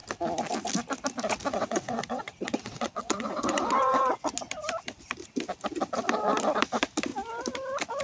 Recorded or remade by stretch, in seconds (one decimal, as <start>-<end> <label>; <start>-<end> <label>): 0.0-1.5 recorded; 1.5-4.3 remade; 4.3-8.0 recorded